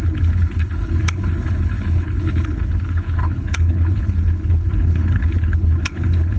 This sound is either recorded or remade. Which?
remade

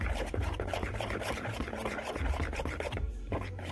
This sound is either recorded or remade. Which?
remade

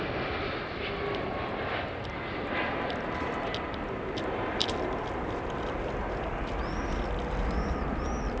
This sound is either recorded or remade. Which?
recorded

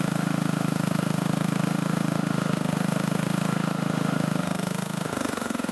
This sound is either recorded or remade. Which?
remade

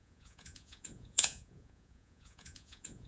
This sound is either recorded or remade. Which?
remade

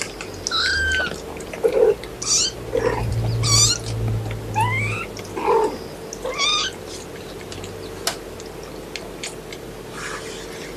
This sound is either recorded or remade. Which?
recorded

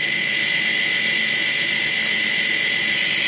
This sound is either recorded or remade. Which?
recorded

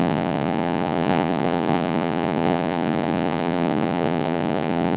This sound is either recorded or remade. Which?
remade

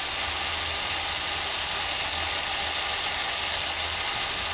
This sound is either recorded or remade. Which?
recorded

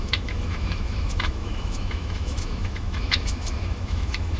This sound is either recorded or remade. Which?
remade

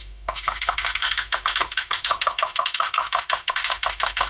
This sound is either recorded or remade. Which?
remade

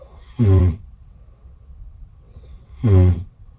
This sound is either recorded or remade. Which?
remade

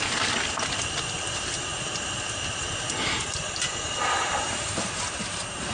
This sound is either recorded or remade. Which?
recorded